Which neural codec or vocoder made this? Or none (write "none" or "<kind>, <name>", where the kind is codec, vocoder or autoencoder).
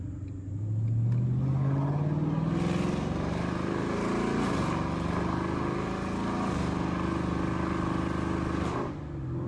none